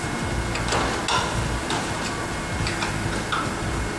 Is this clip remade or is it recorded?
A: recorded